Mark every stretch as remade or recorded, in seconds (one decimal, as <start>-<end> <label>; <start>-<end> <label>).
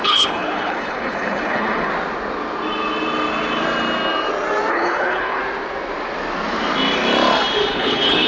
0.0-1.9 remade; 1.9-4.7 recorded; 4.7-5.4 remade; 5.4-7.7 recorded; 7.7-8.3 remade